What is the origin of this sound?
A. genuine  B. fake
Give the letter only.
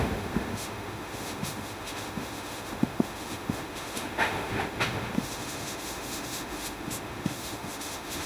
B